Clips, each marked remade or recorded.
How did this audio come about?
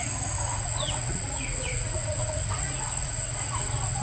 remade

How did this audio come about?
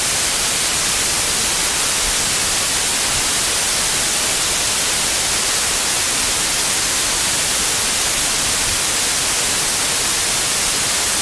recorded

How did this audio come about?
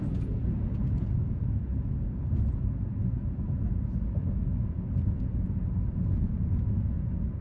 remade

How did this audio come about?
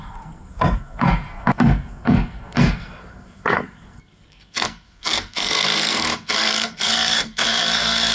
remade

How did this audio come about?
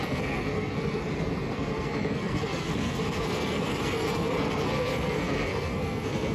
remade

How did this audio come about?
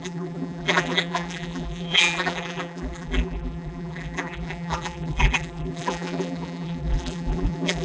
remade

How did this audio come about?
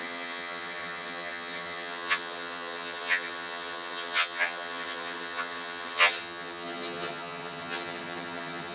remade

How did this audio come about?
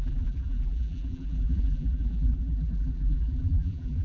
remade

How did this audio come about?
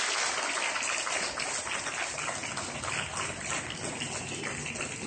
recorded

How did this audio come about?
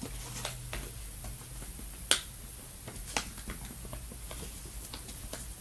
recorded